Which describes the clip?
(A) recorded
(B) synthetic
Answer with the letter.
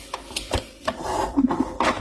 A